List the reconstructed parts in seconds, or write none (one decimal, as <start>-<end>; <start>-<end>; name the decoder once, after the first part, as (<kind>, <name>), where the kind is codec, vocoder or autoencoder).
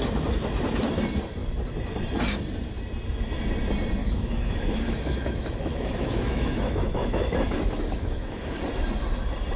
4.0-8.6 (autoencoder, DAC-VAE)